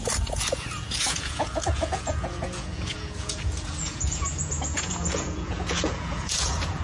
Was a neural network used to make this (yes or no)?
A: yes